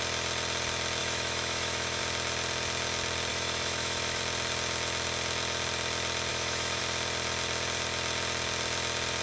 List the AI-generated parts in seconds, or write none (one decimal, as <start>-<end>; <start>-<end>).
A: 1.0-2.0; 3.3-4.2; 6.3-6.8